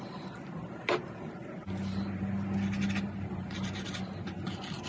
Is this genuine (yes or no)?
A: yes